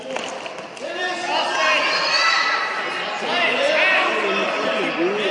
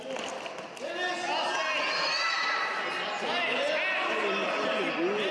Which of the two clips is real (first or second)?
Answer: second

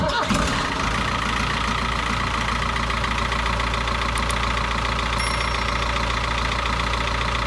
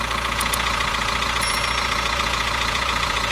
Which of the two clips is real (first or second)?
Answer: first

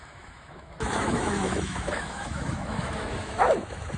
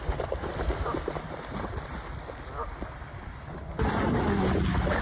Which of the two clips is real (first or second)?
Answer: second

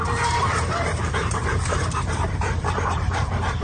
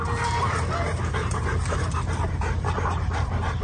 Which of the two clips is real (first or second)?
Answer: second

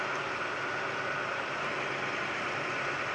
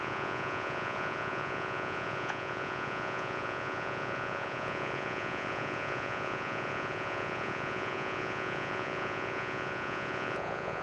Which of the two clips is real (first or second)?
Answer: first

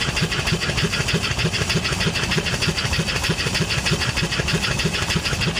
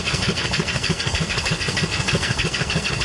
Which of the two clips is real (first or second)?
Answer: first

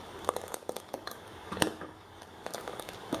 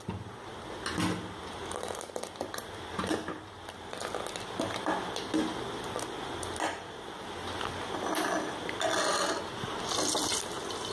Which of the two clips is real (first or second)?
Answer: second